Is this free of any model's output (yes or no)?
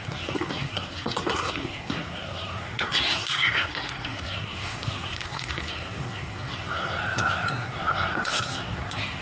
no